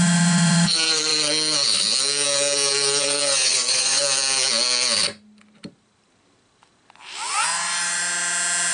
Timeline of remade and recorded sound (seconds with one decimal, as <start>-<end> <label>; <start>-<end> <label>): 0.0-1.1 remade; 1.1-3.0 recorded; 3.0-4.0 remade; 4.0-7.3 recorded; 7.3-8.0 remade; 8.0-8.7 recorded